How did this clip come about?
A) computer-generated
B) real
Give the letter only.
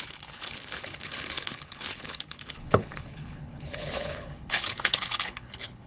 A